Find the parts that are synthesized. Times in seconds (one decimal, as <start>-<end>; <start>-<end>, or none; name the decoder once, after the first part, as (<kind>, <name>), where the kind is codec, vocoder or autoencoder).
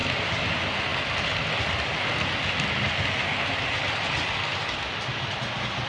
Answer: none